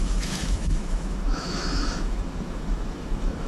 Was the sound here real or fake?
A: fake